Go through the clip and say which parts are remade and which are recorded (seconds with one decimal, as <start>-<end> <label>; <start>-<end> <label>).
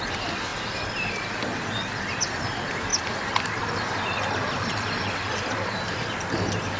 0.0-6.8 recorded